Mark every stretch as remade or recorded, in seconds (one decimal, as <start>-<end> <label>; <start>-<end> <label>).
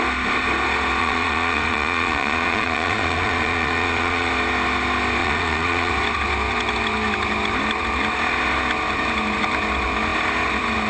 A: 0.0-1.0 recorded; 1.0-4.3 remade; 4.3-5.2 recorded; 5.2-5.9 remade; 5.9-10.9 recorded